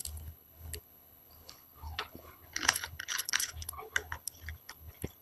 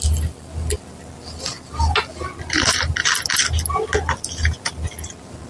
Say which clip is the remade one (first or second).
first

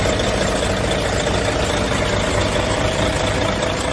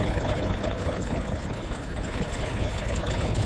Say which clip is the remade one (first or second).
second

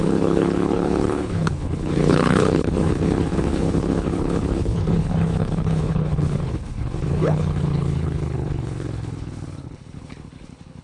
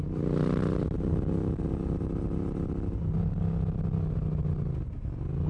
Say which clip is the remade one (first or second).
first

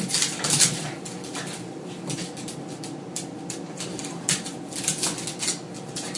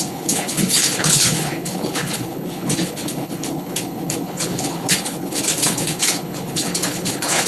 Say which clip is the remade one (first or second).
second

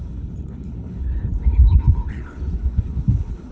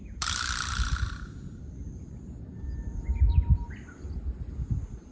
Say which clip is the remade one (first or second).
first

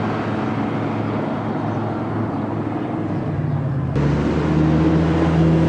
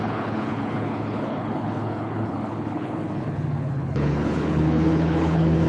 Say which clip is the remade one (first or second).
second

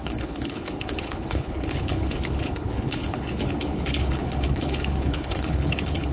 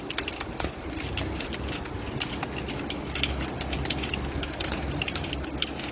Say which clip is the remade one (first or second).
first